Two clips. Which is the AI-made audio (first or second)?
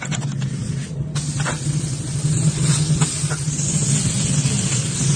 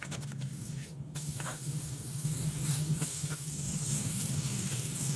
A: second